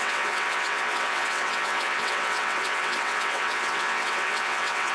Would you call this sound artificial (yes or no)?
yes